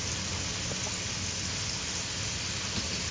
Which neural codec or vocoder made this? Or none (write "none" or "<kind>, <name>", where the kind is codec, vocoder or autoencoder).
none